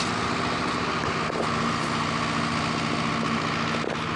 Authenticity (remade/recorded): recorded